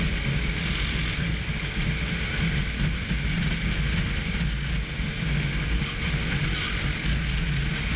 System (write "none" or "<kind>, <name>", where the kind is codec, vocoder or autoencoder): none